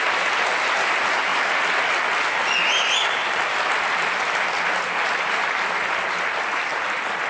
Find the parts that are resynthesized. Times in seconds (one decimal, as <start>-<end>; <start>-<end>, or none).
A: none